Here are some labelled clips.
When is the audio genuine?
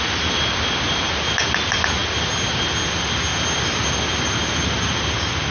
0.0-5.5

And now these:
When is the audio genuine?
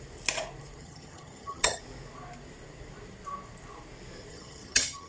0.0-0.8; 1.8-4.3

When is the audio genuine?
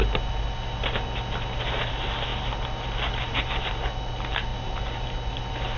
0.0-5.8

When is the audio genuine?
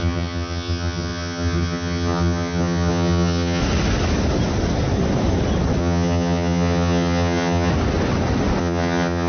3.6-5.8; 7.7-8.6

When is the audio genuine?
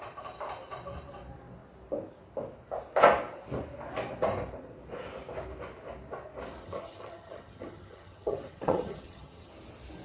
0.0-6.6; 9.5-10.0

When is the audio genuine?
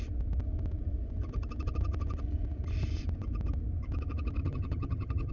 0.0-4.4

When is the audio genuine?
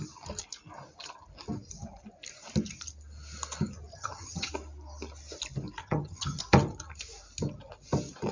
0.0-3.9; 4.5-5.8; 6.4-8.3